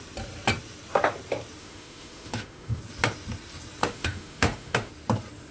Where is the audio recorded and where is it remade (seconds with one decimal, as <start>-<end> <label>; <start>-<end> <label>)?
0.0-1.6 recorded; 1.6-2.8 remade; 2.8-3.8 recorded; 3.8-4.9 remade; 4.9-5.5 recorded